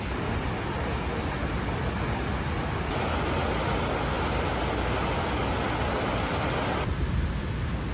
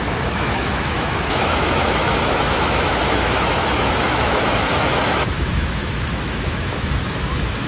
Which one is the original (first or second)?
first